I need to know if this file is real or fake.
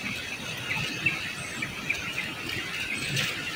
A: real